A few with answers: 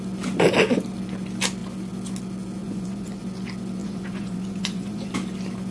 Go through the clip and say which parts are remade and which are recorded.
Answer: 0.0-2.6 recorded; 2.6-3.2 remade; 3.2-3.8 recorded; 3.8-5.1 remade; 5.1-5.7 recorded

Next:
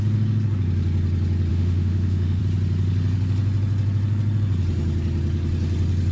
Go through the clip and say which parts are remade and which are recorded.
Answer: 0.0-1.5 recorded; 1.5-2.4 remade; 2.4-6.1 recorded

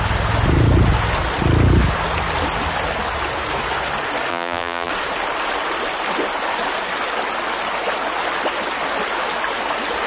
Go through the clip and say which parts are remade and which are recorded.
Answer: 0.0-4.3 recorded; 4.3-4.9 remade; 4.9-10.1 recorded